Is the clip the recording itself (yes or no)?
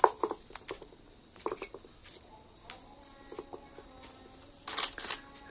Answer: yes